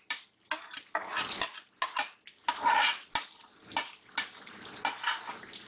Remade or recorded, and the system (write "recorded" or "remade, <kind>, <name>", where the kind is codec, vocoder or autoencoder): recorded